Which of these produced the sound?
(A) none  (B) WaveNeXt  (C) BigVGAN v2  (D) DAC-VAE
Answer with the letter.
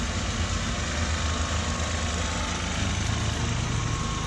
A